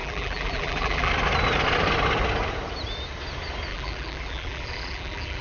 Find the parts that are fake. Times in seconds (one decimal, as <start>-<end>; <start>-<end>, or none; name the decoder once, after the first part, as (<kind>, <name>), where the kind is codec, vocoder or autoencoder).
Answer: 0.0-1.1 (vocoder, BigVGAN v2); 3.7-5.4